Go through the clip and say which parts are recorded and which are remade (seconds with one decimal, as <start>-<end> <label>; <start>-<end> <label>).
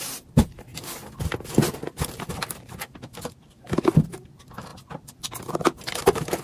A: 0.0-6.4 recorded